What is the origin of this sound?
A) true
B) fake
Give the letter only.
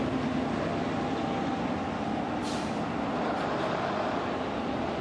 A